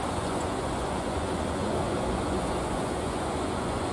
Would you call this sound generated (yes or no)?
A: yes